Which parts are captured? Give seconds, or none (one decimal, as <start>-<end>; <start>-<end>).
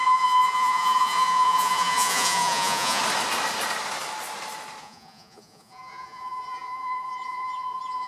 3.0-4.8